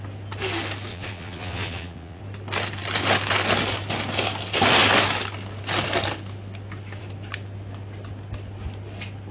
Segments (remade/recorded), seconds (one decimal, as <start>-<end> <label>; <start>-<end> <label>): 0.0-0.9 recorded; 0.9-2.2 remade; 2.2-9.3 recorded